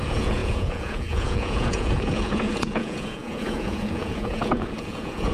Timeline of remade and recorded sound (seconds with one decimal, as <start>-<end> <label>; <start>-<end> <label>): 0.0-5.3 remade